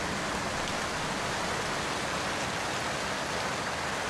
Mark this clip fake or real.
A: real